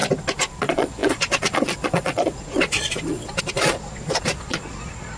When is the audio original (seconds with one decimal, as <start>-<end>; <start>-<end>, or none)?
0.0-0.6